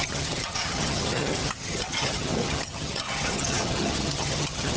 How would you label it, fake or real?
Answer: fake